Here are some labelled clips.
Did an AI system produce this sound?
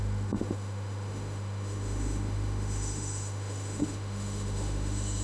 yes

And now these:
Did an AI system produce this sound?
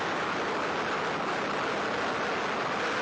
no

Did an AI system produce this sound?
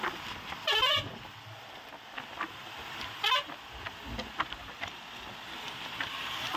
no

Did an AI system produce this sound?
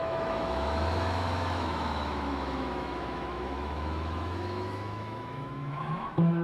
yes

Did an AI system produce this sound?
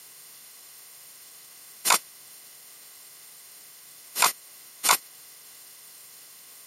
yes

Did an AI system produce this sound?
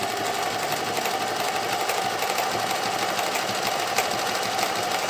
no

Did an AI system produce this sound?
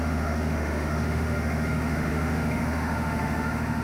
yes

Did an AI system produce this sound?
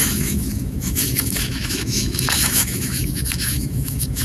yes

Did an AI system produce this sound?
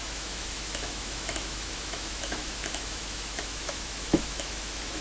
yes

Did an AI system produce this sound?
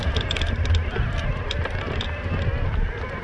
no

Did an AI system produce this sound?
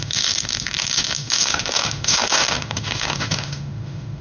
yes